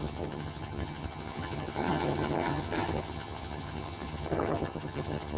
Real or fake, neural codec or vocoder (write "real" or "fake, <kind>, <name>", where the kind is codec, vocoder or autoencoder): fake, vocoder, HiFi-GAN